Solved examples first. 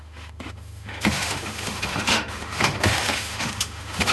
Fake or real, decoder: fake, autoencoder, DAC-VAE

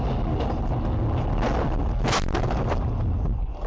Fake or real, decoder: real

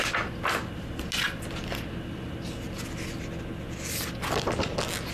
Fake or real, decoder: real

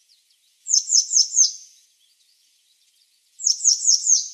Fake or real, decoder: fake, vocoder, Vocos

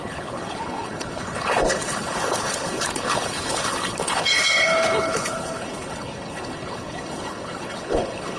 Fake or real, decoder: fake, codec, HILCodec